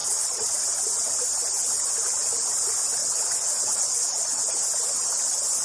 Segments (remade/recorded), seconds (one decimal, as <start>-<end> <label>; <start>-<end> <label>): 0.0-0.6 remade; 0.6-3.0 recorded; 3.0-4.4 remade; 4.4-5.6 recorded